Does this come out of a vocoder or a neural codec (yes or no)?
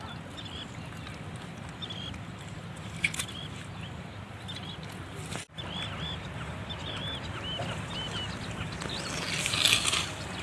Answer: no